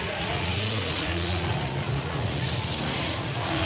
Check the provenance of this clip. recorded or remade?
remade